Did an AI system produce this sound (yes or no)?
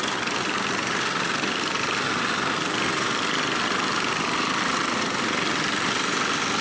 no